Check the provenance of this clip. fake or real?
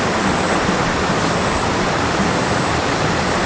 real